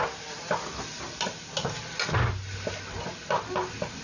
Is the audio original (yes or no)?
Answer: yes